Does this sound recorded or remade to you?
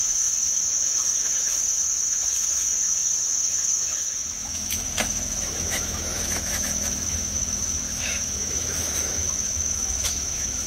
remade